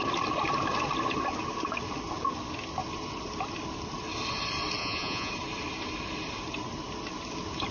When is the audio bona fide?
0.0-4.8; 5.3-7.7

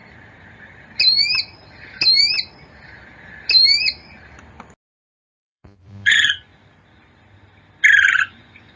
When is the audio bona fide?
0.0-4.8; 6.5-8.1

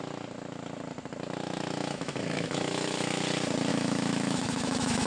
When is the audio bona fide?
0.0-1.8; 3.2-3.7

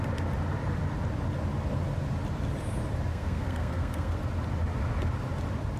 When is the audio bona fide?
0.0-3.1; 4.2-5.8